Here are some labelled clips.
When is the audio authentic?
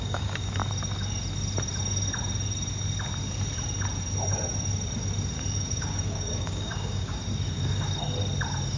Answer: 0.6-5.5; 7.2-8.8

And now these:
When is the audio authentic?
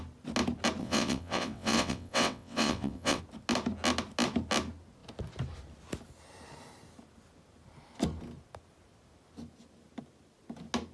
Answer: 0.0-0.8; 3.2-10.9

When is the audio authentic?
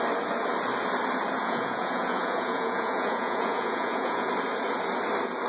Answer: 0.0-1.4; 4.3-5.5